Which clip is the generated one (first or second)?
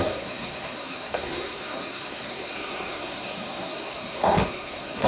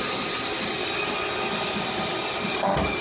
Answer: first